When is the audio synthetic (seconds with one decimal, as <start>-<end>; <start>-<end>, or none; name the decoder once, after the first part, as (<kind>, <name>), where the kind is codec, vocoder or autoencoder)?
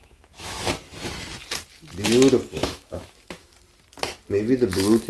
0.0-0.7 (autoencoder, DAC-VAE); 2.5-3.5